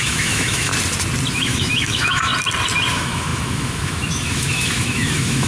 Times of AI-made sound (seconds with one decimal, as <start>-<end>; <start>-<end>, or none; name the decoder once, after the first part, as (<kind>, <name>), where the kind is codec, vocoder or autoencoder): 0.0-0.7 (autoencoder, DAC-VAE); 1.3-2.3; 2.9-5.5